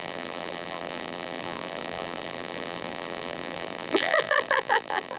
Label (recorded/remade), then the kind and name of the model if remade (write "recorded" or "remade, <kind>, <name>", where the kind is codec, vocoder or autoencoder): remade, vocoder, BigVGAN v2